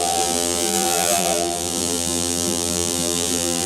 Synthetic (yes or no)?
yes